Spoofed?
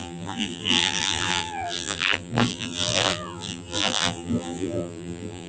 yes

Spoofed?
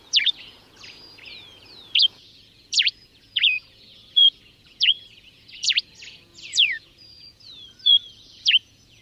yes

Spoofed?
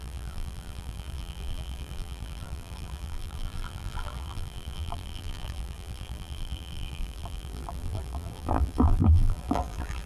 yes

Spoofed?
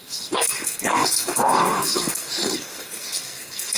yes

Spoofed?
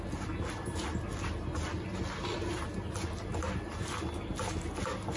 no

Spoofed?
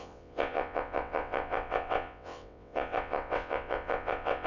yes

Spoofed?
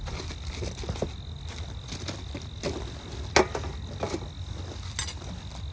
no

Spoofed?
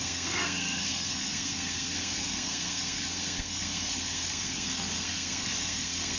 yes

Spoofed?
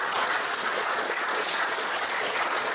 yes